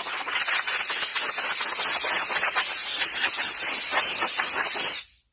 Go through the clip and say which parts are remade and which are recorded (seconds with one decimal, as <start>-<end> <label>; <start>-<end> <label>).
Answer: 0.0-5.3 remade